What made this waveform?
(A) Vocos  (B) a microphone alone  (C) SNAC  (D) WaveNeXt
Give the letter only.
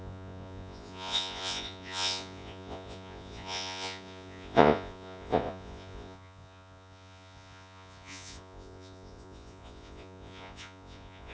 A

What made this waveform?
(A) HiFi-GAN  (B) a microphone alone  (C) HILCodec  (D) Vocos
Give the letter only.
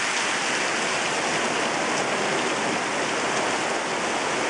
B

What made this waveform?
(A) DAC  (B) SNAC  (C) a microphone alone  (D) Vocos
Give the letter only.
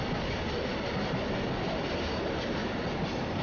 C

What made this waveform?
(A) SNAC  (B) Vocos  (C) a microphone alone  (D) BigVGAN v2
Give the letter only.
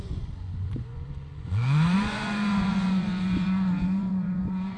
B